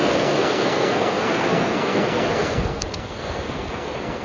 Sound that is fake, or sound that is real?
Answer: fake